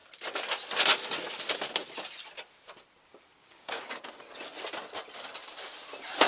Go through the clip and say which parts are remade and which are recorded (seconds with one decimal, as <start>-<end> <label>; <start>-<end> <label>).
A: 0.0-3.4 recorded; 3.4-4.1 remade; 4.1-6.3 recorded